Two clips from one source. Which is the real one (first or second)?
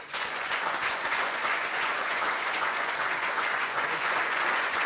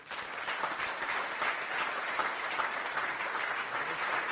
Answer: second